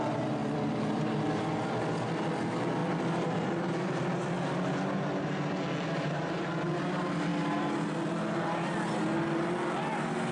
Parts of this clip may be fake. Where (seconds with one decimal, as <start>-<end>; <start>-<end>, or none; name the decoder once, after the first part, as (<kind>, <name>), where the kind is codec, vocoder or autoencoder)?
0.4-1.7 (vocoder, BigVGAN v2); 2.8-4.3

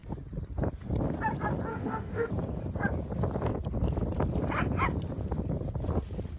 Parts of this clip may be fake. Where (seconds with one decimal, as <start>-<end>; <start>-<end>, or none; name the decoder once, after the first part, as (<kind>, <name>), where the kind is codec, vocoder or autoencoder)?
1.7-2.3 (autoencoder, DAC-VAE)

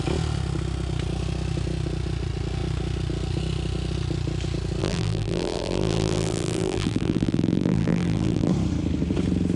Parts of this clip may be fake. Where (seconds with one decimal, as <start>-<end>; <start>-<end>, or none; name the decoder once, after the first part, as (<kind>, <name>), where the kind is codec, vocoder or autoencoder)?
4.8-8.5 (vocoder, BigVGAN v2)

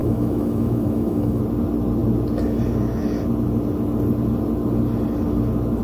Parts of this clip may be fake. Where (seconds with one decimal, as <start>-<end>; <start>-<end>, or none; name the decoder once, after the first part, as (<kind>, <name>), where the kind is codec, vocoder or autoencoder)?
0.0-1.4 (autoencoder, DAC-VAE)

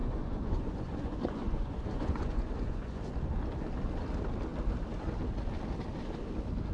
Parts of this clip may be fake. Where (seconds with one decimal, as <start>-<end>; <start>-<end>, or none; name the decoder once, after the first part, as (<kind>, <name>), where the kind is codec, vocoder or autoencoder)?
0.0-3.0 (vocoder, Vocos)

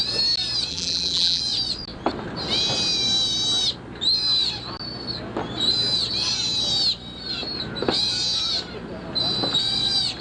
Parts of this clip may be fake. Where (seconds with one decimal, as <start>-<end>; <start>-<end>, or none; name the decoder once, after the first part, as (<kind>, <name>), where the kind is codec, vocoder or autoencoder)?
0.7-1.4 (vocoder, BigVGAN v2)

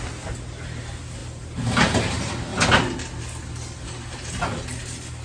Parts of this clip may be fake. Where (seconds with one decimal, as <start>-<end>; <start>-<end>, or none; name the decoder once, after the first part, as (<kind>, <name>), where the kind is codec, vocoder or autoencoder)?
none